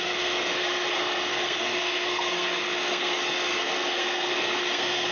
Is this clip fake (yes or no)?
yes